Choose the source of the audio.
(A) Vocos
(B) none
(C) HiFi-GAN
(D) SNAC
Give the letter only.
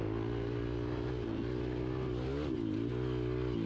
B